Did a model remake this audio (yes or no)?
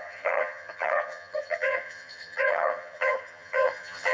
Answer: yes